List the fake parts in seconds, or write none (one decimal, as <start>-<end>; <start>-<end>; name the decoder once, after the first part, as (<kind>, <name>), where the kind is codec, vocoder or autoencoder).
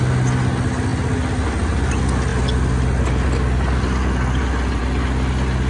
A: none